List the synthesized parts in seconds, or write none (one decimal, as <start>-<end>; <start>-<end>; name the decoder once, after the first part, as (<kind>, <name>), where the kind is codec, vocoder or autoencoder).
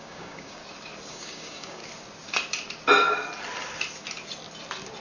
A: 0.0-0.6 (codec, DAC); 1.1-1.8